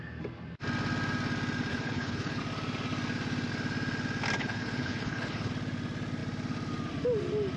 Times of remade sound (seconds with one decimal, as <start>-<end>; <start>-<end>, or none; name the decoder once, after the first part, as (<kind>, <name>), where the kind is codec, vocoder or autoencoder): 1.7-2.4 (codec, HILCodec); 4.4-5.5